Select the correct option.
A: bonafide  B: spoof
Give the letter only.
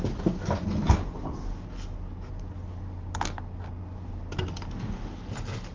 A